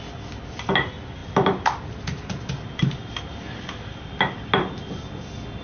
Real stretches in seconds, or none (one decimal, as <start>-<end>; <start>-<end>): 0.0-5.6